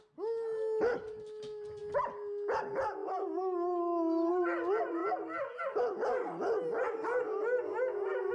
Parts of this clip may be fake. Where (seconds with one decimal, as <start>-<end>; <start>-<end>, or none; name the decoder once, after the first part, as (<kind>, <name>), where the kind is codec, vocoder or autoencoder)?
none